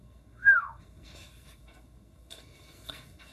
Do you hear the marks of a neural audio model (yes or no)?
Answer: yes